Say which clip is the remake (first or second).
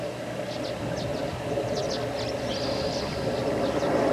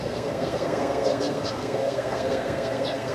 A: second